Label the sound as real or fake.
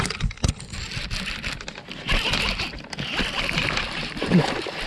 real